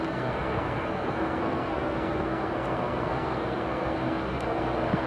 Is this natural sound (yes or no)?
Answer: no